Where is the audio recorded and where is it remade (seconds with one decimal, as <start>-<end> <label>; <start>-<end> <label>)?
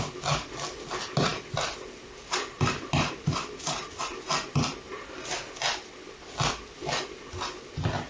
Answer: 0.0-1.3 recorded; 1.3-4.5 remade; 4.5-4.9 recorded; 4.9-6.5 remade; 6.5-8.1 recorded